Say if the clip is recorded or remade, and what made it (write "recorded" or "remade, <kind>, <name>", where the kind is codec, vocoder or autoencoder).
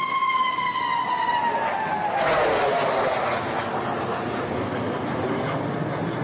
recorded